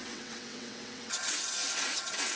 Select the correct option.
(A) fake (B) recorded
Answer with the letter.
A